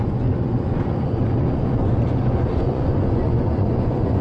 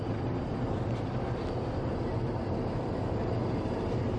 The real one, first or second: second